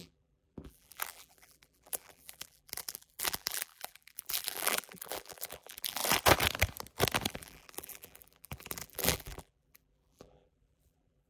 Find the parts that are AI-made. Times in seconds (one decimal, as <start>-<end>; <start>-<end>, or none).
0.0-6.0; 7.3-11.3